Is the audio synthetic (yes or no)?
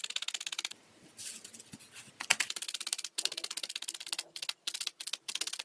no